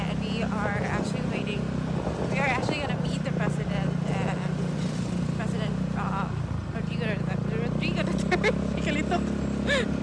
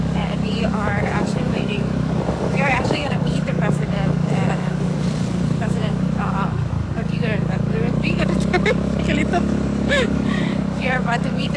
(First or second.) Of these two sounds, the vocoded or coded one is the second